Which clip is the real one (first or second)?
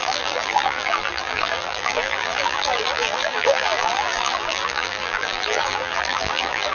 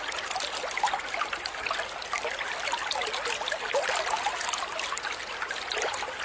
second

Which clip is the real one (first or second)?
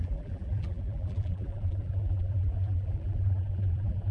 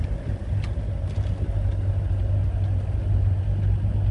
second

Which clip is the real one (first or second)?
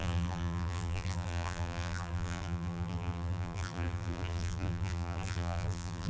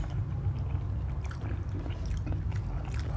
second